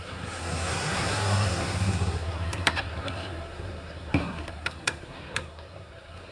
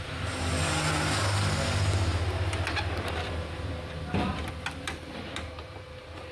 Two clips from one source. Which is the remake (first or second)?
first